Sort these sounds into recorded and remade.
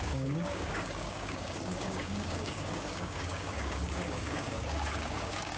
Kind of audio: remade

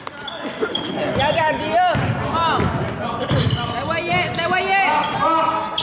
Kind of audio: recorded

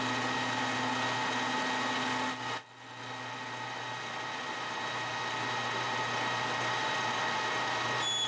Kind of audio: recorded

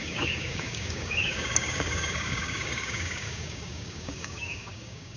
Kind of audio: remade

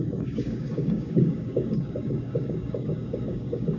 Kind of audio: remade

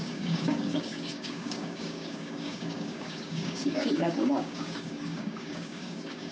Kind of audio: remade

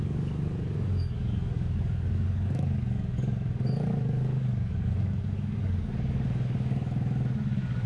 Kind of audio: remade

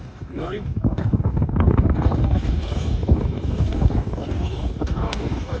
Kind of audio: remade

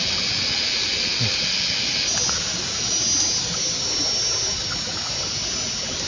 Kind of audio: recorded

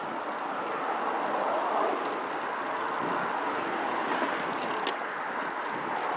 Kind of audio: recorded